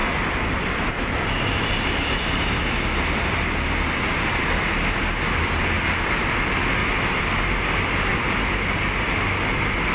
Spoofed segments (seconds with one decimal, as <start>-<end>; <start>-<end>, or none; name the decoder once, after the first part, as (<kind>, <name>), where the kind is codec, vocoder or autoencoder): none